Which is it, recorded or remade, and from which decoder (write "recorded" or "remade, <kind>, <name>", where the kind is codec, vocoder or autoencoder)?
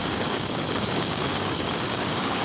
remade, codec, DAC